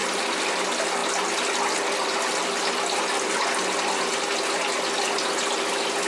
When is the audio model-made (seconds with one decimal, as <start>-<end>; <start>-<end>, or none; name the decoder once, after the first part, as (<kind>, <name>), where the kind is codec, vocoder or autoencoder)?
none